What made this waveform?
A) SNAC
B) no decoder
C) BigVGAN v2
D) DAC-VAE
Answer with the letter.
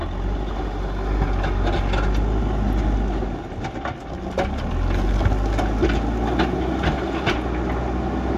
B